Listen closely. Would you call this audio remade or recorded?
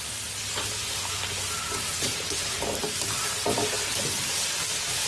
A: recorded